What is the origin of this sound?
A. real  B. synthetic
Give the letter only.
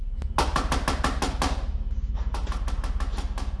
A